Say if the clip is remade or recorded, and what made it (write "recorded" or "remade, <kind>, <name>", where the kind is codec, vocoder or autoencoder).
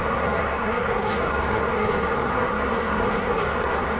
remade, codec, SNAC